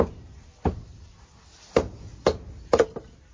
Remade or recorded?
recorded